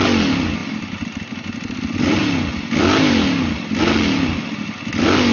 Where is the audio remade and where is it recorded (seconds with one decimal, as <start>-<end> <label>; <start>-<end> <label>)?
0.0-5.3 recorded